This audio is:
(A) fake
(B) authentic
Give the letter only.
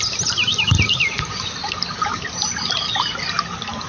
B